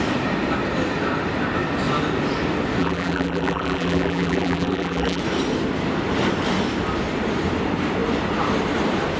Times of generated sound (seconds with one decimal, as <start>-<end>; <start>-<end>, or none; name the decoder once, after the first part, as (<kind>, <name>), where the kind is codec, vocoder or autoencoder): 2.8-5.2 (vocoder, BigVGAN v2)